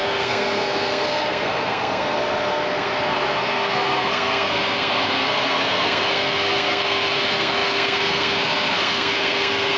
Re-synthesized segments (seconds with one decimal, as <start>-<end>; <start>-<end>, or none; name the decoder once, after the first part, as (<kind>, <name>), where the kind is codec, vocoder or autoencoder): 0.0-9.8 (codec, SNAC)